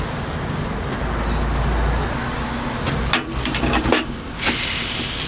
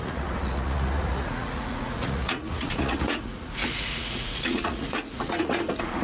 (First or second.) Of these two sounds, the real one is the first